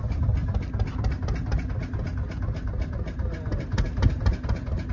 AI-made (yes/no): no